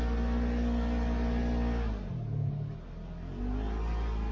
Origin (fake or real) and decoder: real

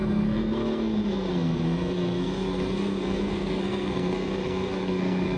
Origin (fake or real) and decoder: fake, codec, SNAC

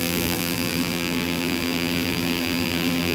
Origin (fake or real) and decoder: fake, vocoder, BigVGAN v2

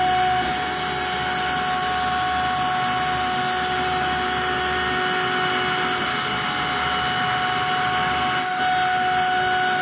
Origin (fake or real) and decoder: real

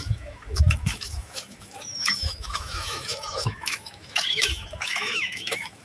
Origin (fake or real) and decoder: fake, autoencoder, DAC-VAE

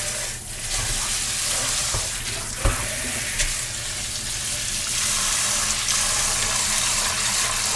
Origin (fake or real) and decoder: real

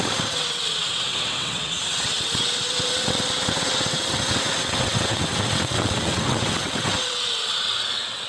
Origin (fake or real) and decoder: fake, vocoder, WaveNeXt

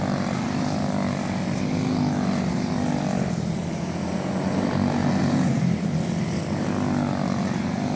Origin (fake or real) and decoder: real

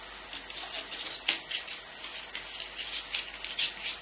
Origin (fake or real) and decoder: real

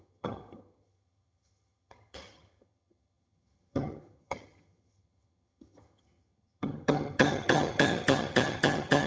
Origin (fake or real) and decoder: fake, vocoder, HiFi-GAN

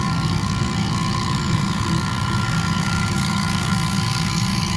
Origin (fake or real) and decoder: fake, codec, DAC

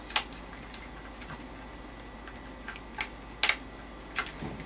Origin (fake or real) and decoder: real